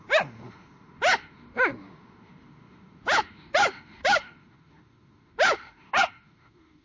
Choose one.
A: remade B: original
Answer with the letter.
A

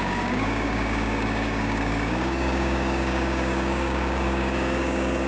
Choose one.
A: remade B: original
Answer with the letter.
A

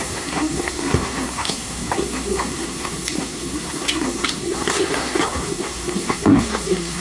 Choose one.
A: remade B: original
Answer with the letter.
A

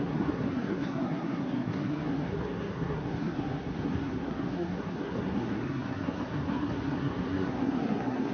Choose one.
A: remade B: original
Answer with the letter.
A